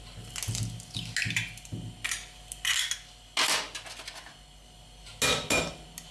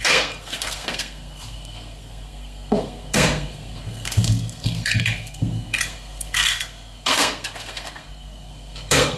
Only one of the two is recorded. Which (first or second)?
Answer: first